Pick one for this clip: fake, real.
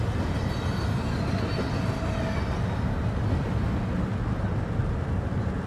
real